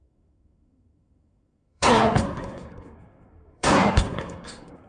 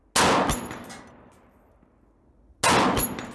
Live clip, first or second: second